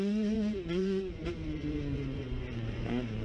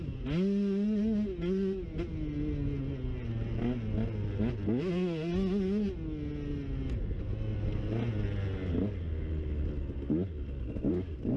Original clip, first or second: second